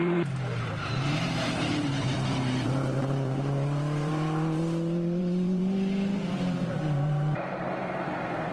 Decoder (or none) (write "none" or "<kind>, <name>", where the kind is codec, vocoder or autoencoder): vocoder, BigVGAN v2